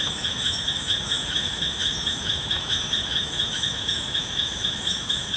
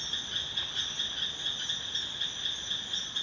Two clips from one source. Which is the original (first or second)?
second